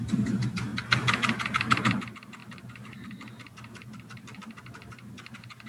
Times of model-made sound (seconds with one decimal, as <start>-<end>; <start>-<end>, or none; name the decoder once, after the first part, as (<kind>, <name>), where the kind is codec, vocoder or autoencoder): 0.0-0.7 (vocoder, BigVGAN v2); 1.8-5.7